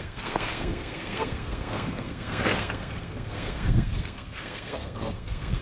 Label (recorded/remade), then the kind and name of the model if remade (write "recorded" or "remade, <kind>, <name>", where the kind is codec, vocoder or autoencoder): remade, codec, SNAC